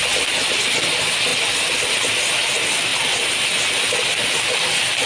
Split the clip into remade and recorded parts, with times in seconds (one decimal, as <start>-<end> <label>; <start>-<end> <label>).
0.0-5.1 recorded

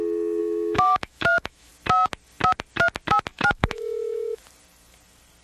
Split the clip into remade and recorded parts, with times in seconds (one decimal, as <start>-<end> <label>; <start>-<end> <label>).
0.0-0.4 recorded; 0.4-1.7 remade; 1.7-3.3 recorded; 3.3-4.4 remade; 4.4-5.4 recorded

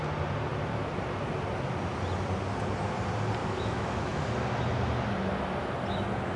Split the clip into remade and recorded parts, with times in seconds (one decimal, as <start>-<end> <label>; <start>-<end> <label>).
0.0-3.4 recorded; 3.4-4.2 remade; 4.2-6.4 recorded

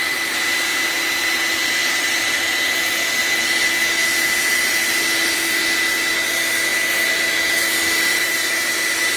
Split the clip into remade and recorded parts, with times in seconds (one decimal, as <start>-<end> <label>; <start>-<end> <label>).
0.0-9.2 recorded

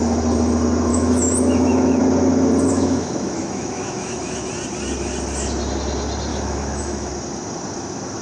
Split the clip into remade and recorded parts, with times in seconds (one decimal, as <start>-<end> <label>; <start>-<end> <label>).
0.0-0.9 recorded; 0.9-2.0 remade; 2.0-2.7 recorded; 2.7-4.5 remade; 4.5-6.3 recorded; 6.3-7.1 remade; 7.1-8.2 recorded

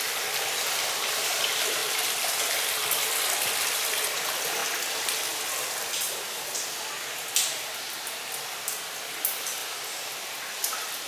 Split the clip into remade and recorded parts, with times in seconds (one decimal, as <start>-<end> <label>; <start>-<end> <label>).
0.0-11.1 recorded